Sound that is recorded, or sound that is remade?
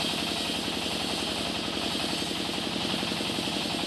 recorded